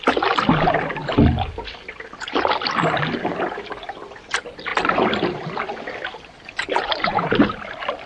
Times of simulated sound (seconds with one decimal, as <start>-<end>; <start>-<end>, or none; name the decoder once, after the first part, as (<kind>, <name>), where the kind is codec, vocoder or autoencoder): 7.1-7.6 (vocoder, BigVGAN v2)